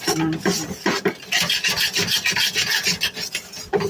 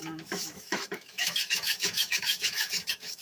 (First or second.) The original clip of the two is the first